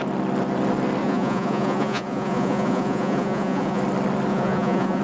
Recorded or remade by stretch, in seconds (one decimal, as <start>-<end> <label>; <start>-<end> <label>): 0.0-1.0 recorded; 1.0-3.8 remade; 3.8-4.3 recorded; 4.3-5.0 remade